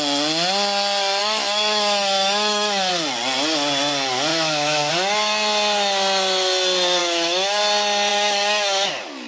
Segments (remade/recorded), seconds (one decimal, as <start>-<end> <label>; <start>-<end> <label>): 0.0-1.2 recorded; 1.2-2.9 remade; 2.9-4.3 recorded; 4.3-4.9 remade; 4.9-7.0 recorded; 7.0-7.6 remade; 7.6-8.1 recorded; 8.1-8.9 remade; 8.9-9.3 recorded